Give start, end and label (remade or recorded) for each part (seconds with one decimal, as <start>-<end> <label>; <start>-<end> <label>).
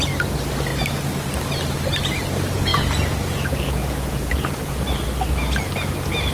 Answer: 0.0-2.7 recorded; 2.7-4.8 remade; 4.8-6.3 recorded